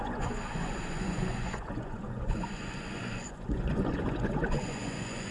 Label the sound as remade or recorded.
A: remade